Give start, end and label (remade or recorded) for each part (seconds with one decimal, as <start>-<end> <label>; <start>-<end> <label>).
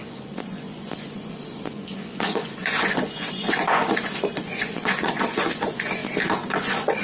0.0-6.0 remade; 6.0-6.5 recorded; 6.5-7.0 remade